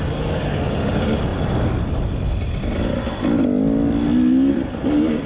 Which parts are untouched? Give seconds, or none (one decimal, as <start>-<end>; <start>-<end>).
0.0-5.3